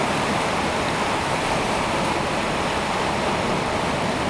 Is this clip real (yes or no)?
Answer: yes